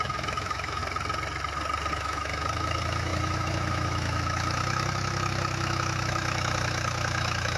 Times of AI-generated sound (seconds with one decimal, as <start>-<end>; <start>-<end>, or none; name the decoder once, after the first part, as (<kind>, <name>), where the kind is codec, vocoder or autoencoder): 0.0-0.8 (autoencoder, DAC-VAE); 1.9-7.6